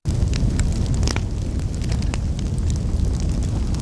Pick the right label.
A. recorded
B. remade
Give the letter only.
A